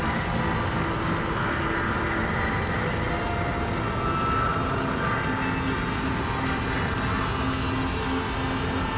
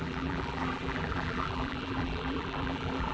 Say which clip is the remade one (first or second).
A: second